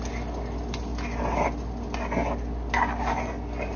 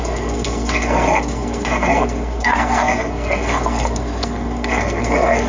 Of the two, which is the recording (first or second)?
first